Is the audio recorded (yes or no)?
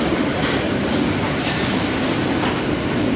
yes